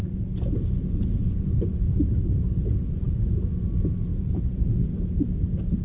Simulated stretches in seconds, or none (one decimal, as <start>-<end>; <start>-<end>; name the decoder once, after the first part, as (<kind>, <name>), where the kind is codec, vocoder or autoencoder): 0.0-3.5 (vocoder, Vocos); 4.1-4.6